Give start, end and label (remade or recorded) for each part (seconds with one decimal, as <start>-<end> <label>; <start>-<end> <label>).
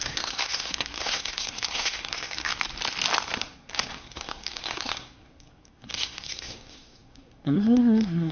0.0-2.5 remade; 2.5-3.4 recorded; 3.4-8.3 remade